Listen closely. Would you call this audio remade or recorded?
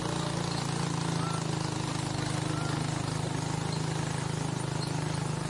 recorded